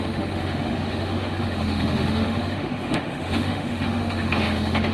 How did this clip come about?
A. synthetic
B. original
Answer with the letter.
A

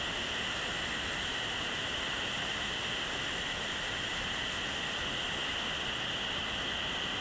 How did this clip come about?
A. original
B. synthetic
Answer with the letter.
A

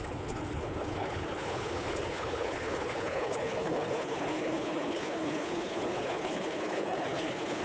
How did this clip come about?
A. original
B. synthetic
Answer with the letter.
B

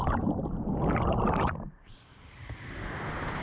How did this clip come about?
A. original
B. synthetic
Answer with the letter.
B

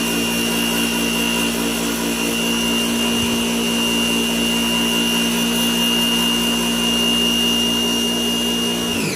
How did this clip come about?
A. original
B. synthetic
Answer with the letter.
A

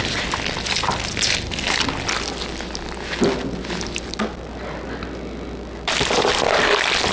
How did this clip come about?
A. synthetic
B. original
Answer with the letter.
B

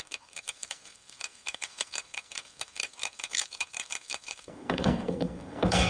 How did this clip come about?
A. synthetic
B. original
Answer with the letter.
A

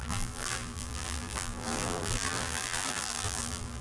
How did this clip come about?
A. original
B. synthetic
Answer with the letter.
B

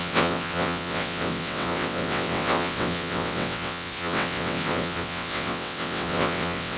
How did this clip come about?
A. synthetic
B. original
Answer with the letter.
A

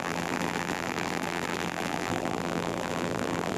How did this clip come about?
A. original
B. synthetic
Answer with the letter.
B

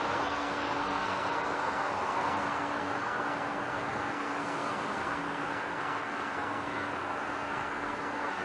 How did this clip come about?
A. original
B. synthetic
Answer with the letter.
B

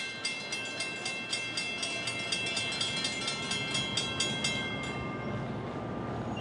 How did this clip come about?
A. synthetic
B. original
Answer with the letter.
B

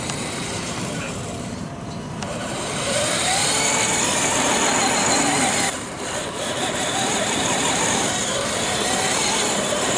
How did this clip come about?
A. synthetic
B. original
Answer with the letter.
A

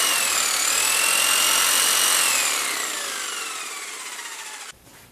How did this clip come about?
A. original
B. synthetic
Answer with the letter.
A